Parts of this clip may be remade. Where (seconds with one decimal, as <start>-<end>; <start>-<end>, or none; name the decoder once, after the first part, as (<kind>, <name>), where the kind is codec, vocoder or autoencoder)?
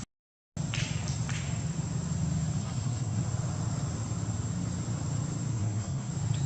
2.6-3.2 (codec, SNAC); 5.5-6.1